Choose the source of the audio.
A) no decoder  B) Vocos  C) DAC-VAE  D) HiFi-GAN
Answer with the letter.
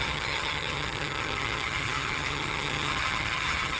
D